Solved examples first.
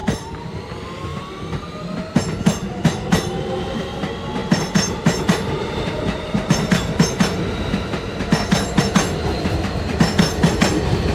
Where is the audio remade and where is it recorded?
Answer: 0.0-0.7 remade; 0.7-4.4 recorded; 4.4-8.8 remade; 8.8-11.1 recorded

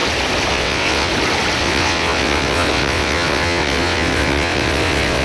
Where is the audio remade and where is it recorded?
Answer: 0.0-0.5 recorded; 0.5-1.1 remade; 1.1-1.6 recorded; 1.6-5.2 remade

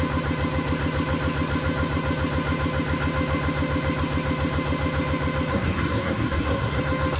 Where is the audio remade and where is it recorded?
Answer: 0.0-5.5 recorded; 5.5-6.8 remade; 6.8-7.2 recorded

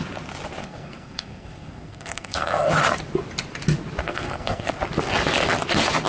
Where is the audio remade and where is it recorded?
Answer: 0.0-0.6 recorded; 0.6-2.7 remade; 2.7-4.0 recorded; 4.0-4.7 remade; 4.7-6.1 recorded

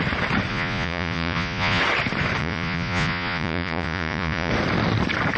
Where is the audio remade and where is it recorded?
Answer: 0.0-0.5 recorded; 0.5-1.8 remade; 1.8-2.4 recorded; 2.4-4.5 remade; 4.5-5.4 recorded

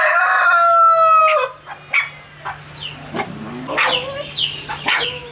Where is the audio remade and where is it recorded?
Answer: 0.0-5.3 recorded